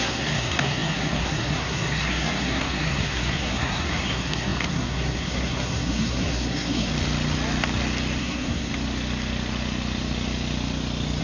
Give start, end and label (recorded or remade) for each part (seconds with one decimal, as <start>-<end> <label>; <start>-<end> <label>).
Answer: 0.0-6.9 remade; 6.9-8.2 recorded; 8.2-8.7 remade; 8.7-11.2 recorded